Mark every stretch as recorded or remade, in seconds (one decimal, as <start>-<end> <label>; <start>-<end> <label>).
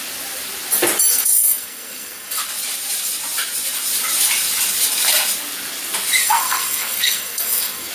0.0-1.1 recorded; 1.1-2.4 remade; 2.4-6.2 recorded; 6.2-7.9 remade